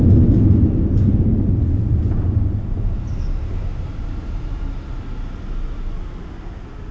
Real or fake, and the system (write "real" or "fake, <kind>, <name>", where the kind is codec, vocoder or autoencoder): real